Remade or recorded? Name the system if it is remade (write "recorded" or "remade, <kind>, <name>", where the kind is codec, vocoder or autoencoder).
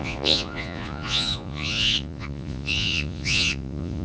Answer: remade, vocoder, Vocos